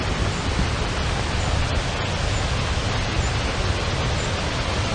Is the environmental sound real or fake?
real